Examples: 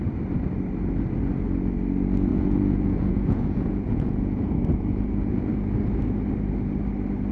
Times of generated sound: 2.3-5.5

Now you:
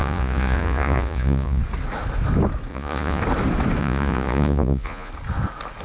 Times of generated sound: 0.0-1.6; 2.7-3.2; 3.8-5.1

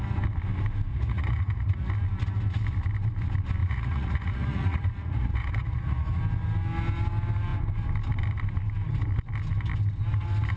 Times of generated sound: 0.9-1.9; 3.6-6.2

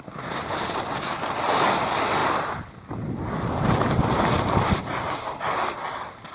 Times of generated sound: none

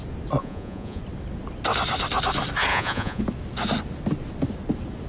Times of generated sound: 0.4-1.0; 2.7-3.2

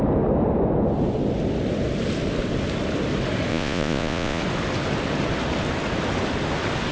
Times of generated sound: 3.5-4.4

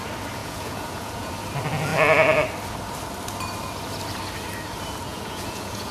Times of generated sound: 0.4-1.3; 5.1-5.9

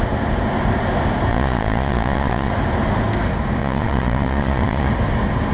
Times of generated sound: 1.3-2.5; 3.6-4.9